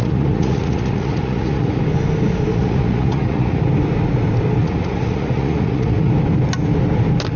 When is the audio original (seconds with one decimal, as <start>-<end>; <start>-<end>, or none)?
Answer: 1.8-2.5; 3.6-4.6; 6.1-7.4